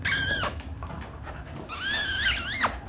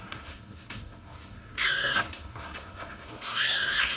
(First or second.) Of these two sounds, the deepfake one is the second